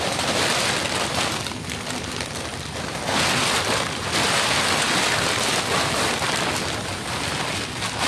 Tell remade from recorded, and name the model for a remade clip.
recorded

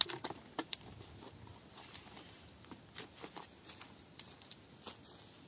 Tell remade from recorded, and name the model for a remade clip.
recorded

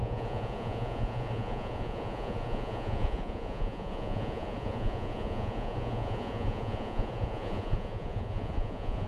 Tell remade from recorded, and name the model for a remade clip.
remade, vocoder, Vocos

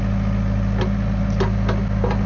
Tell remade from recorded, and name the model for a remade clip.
recorded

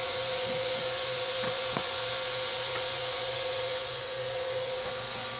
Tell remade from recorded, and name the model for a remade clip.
remade, vocoder, Vocos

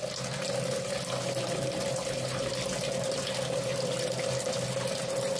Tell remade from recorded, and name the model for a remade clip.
recorded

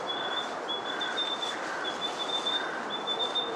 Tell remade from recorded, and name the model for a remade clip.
recorded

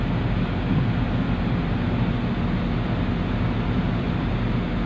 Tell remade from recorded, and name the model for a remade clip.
recorded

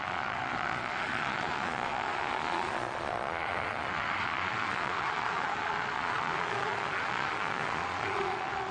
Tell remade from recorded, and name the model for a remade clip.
remade, vocoder, Vocos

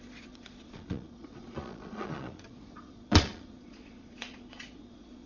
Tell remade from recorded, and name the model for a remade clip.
remade, vocoder, Vocos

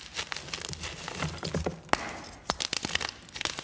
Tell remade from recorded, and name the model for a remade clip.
recorded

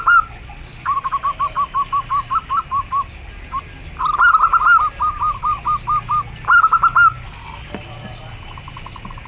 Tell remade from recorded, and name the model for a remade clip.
recorded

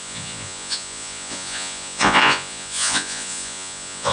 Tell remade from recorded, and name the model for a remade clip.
remade, vocoder, Vocos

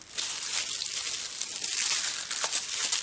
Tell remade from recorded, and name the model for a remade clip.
recorded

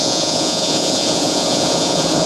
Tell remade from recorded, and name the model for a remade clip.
remade, vocoder, Vocos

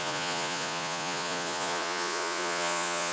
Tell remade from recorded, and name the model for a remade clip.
remade, vocoder, Vocos